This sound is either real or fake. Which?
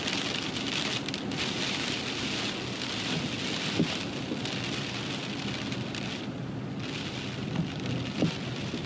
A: real